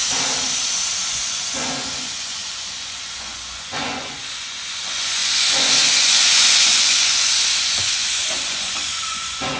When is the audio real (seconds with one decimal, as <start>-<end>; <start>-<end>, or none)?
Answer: 0.0-1.1